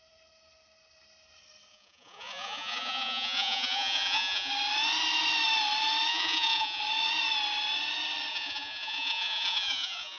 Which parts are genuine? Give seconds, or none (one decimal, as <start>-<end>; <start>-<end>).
0.0-1.7; 4.5-6.1; 6.8-8.3